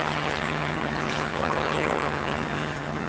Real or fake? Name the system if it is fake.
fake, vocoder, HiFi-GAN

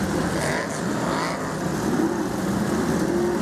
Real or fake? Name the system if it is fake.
real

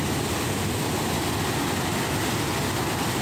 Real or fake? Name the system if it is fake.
real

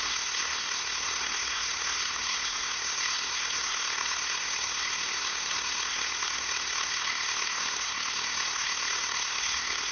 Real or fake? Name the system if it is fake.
fake, codec, SNAC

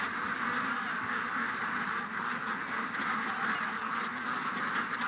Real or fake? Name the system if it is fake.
real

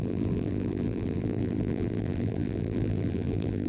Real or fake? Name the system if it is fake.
fake, vocoder, BigVGAN v2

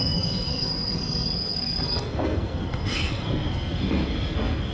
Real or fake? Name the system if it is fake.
fake, codec, SNAC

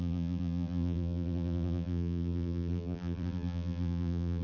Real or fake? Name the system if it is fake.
fake, vocoder, BigVGAN v2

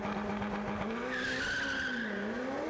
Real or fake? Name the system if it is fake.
real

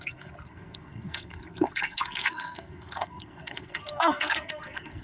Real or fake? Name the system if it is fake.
fake, codec, SNAC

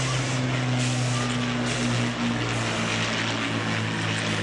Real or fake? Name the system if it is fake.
real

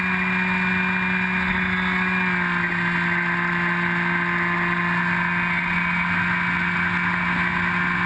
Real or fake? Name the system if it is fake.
real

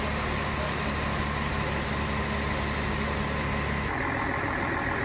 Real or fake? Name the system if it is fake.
real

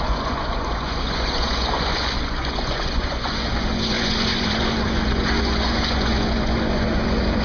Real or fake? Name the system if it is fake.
fake, vocoder, Vocos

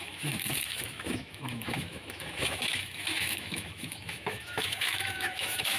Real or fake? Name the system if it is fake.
fake, autoencoder, DAC-VAE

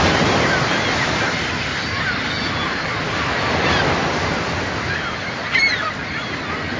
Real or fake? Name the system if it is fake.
real